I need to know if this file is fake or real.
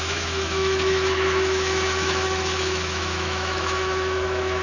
fake